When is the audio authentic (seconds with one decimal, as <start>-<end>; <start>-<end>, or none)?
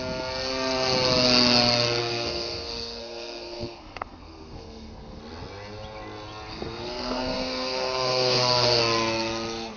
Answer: 0.0-2.0; 5.2-6.5; 8.8-9.8